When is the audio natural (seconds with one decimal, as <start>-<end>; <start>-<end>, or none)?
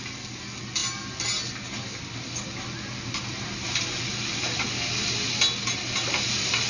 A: 0.0-6.7